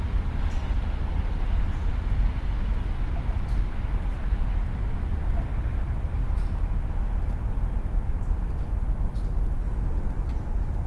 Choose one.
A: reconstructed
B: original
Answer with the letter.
B